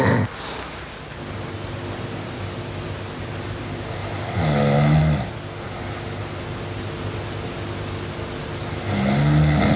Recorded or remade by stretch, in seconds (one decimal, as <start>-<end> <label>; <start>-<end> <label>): 0.0-9.8 recorded